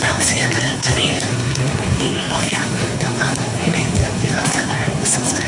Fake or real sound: fake